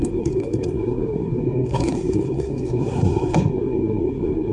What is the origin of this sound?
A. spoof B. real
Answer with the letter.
A